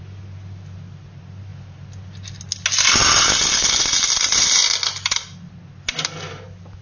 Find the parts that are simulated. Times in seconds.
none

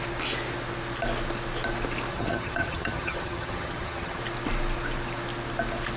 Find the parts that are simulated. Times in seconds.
2.1-4.2 (vocoder, HiFi-GAN)

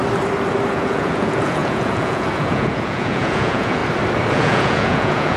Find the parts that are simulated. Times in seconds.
0.7-3.8 (vocoder, Vocos); 4.3-5.4

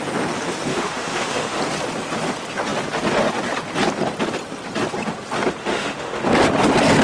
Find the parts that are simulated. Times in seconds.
0.7-1.6 (autoencoder, DAC-VAE); 5.6-6.2

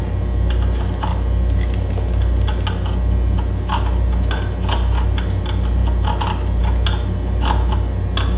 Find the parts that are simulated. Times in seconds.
none

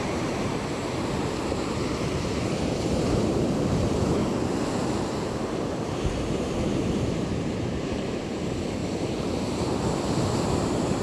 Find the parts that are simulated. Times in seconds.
0.0-4.2 (vocoder, BigVGAN v2); 5.7-8.8; 9.5-11.0